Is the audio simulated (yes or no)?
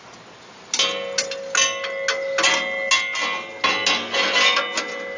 no